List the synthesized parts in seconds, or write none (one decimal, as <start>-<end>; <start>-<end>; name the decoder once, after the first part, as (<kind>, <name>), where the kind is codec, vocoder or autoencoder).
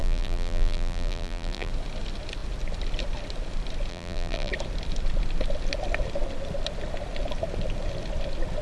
0.0-1.7 (vocoder, BigVGAN v2); 3.9-4.5